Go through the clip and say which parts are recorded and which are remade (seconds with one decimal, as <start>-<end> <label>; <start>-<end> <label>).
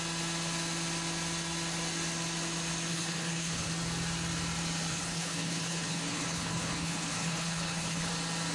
0.0-2.9 recorded; 2.9-3.7 remade; 3.7-4.9 recorded; 4.9-8.1 remade; 8.1-8.5 recorded